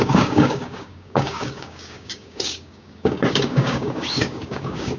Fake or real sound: fake